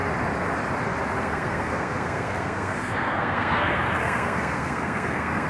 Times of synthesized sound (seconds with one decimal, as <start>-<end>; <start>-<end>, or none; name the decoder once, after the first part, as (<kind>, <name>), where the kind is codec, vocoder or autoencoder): 1.2-5.5 (codec, SNAC)